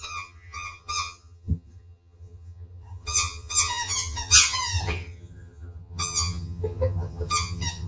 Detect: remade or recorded remade